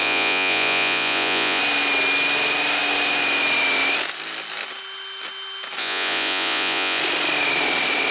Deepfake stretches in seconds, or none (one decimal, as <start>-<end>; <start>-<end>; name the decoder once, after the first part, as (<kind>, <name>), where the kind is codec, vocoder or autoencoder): 0.0-1.6 (vocoder, Vocos); 5.8-7.0